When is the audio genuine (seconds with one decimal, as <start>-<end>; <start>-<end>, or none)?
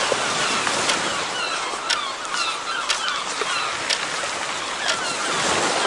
1.1-4.6